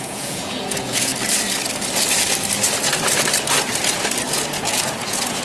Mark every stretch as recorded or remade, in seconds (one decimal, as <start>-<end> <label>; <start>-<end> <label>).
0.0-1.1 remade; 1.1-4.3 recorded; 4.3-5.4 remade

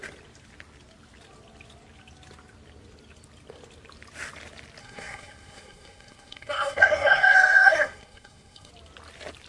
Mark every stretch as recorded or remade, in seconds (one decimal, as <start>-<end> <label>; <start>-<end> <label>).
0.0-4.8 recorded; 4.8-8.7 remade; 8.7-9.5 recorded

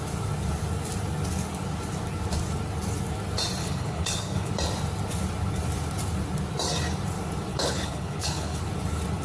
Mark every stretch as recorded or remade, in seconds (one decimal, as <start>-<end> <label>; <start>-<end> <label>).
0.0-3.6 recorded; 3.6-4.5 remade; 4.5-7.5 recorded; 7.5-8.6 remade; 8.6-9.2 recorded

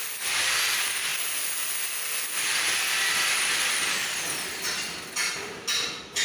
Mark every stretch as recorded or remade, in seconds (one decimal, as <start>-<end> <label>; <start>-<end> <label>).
0.0-5.2 recorded; 5.2-5.8 remade; 5.8-6.2 recorded

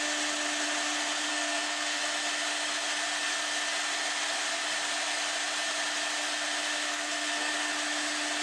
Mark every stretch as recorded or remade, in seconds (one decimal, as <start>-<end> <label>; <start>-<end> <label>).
0.0-1.3 recorded; 1.3-2.0 remade; 2.0-6.9 recorded; 6.9-7.5 remade; 7.5-8.4 recorded

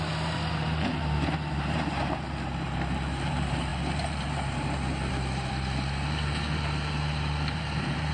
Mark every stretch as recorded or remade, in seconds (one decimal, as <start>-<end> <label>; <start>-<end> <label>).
0.0-8.1 remade

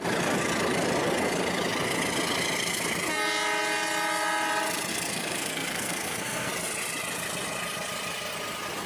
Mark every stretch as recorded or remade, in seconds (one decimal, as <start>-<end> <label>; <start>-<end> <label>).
0.0-4.9 recorded; 4.9-6.5 remade; 6.5-8.9 recorded